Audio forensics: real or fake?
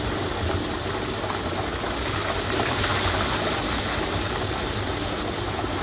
real